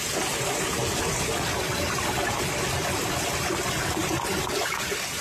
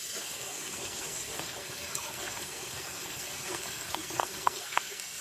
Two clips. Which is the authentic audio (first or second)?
first